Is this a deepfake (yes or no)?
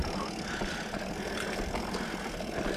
no